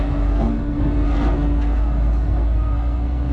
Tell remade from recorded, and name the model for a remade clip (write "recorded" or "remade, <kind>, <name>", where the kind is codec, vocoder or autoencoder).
remade, codec, SNAC